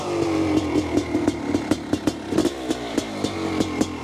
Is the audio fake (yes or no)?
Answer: no